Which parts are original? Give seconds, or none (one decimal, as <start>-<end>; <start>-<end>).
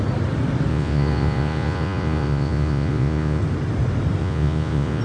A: 0.0-0.7; 3.4-4.2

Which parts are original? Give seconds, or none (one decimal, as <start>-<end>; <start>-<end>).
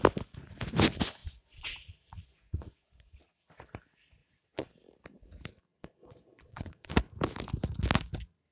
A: 0.0-1.2; 3.5-4.2; 4.7-5.7; 6.9-8.5